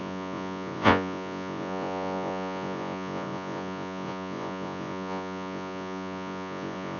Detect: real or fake fake